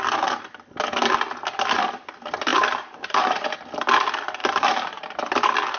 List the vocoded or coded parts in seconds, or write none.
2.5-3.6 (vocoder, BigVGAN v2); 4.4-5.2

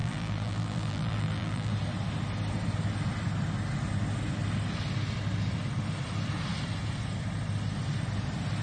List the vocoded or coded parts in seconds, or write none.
0.0-1.7 (vocoder, BigVGAN v2)

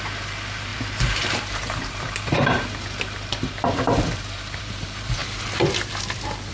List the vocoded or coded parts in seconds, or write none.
0.0-5.2 (vocoder, BigVGAN v2)

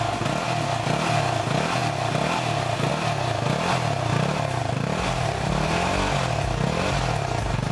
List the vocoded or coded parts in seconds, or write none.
4.6-5.5 (vocoder, BigVGAN v2)

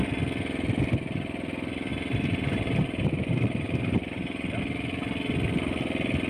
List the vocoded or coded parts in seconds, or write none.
1.9-4.6 (vocoder, BigVGAN v2)